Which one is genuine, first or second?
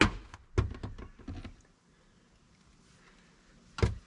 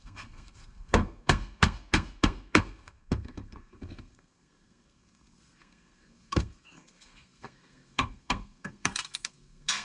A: first